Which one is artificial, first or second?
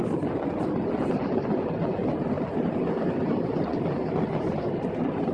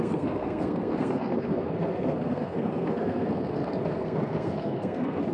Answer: second